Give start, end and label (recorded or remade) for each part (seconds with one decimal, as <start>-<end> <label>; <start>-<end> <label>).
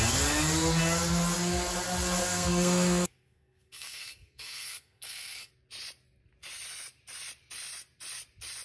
0.0-2.2 recorded; 2.2-5.5 remade; 5.5-8.6 recorded